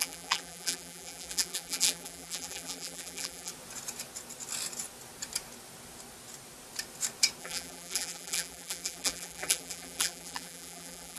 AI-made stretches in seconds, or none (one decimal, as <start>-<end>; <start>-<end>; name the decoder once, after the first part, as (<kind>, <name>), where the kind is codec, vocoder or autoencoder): 0.0-3.5 (vocoder, BigVGAN v2); 7.4-11.2